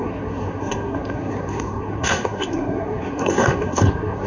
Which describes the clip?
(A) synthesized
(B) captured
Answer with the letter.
A